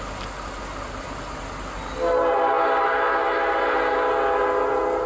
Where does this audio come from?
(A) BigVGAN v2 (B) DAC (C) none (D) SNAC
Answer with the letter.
C